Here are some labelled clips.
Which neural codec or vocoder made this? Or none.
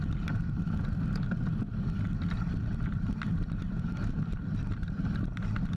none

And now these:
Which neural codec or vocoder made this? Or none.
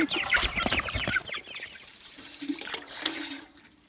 vocoder, BigVGAN v2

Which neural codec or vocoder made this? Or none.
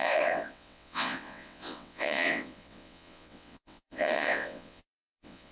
vocoder, WaveNeXt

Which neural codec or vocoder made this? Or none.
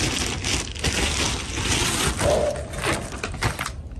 none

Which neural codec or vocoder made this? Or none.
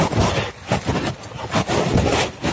none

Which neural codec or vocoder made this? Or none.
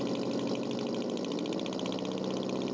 none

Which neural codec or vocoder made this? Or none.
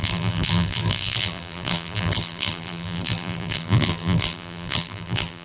vocoder, BigVGAN v2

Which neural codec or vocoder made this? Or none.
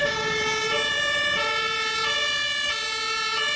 none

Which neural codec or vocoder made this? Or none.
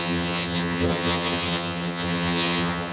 vocoder, HiFi-GAN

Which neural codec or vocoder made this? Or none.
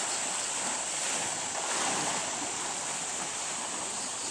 none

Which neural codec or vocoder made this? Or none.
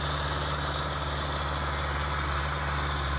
none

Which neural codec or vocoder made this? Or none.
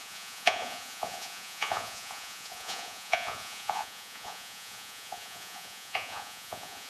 vocoder, Vocos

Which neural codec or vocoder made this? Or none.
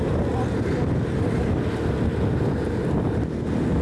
none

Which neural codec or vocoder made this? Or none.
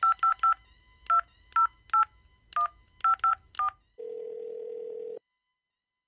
none